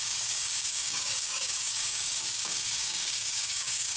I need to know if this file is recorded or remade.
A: remade